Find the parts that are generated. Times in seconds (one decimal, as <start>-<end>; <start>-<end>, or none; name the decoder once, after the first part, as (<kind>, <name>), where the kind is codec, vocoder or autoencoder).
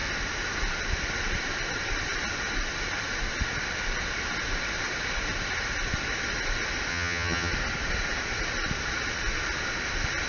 6.9-7.5 (vocoder, HiFi-GAN)